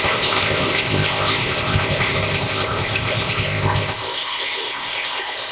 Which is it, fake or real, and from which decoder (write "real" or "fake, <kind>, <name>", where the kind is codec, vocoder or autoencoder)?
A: fake, codec, ZipCodec